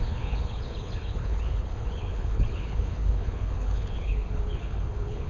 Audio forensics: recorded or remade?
remade